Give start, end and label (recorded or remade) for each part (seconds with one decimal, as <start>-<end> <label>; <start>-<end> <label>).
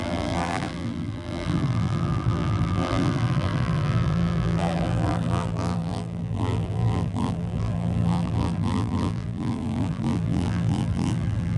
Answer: 0.0-11.6 remade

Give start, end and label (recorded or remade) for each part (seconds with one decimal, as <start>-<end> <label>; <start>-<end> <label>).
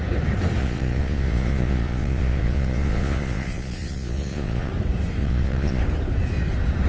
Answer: 0.0-0.6 recorded; 0.6-4.7 remade; 4.7-5.2 recorded; 5.2-5.8 remade; 5.8-6.9 recorded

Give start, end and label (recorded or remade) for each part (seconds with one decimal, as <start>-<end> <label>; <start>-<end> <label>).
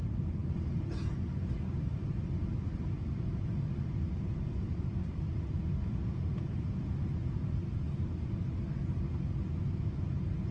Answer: 0.0-2.1 recorded; 2.1-6.3 remade; 6.3-10.5 recorded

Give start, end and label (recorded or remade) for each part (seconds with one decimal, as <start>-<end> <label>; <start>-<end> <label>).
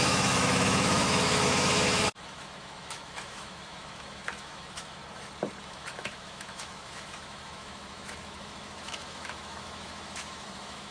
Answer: 0.0-5.0 remade; 5.0-5.6 recorded; 5.6-10.9 remade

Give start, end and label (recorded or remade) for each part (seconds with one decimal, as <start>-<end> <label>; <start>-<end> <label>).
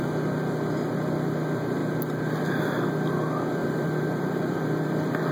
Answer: 0.0-3.6 recorded; 3.6-5.3 remade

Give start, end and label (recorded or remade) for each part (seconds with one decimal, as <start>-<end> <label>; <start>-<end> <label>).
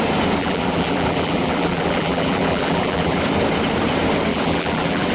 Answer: 0.0-0.4 recorded; 0.4-3.2 remade; 3.2-4.3 recorded; 4.3-5.1 remade